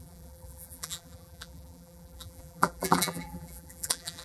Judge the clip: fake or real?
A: fake